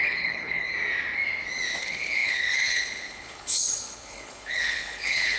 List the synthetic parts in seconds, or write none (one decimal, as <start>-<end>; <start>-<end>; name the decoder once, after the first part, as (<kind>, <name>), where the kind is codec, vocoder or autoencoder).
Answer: 0.0-0.7 (codec, HILCodec); 1.8-5.4